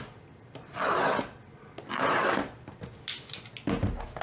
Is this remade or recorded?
recorded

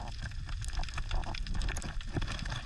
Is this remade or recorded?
recorded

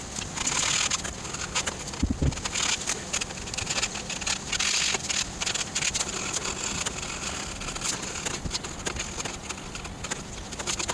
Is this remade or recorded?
recorded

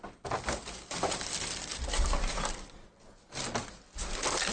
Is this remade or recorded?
recorded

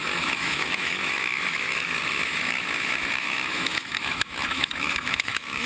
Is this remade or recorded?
remade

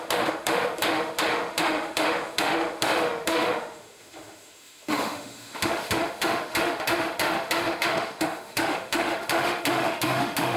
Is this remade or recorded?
remade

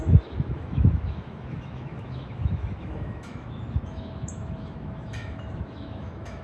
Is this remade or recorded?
remade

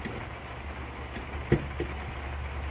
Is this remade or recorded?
recorded